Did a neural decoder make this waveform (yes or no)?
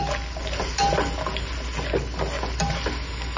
no